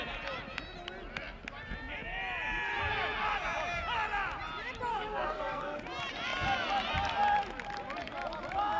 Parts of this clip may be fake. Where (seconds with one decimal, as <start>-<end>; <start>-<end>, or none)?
4.9-5.8